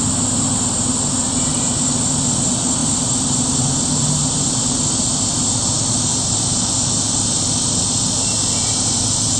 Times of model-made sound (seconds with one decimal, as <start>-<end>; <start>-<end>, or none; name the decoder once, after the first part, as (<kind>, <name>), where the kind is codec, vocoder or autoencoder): 6.1-6.6 (vocoder, BigVGAN v2)